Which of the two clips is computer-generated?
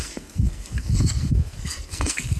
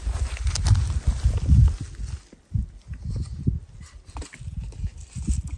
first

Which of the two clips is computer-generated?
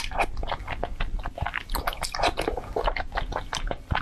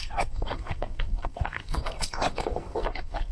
second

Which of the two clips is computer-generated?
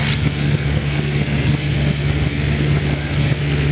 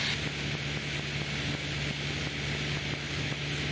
first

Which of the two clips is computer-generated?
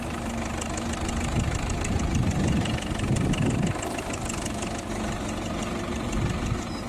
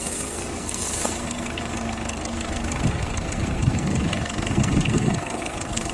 second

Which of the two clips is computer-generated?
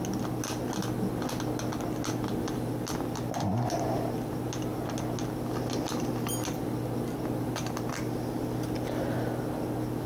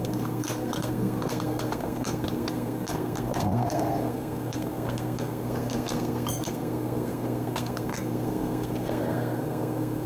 second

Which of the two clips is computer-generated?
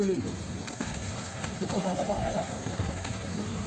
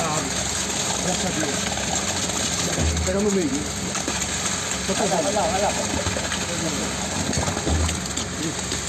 first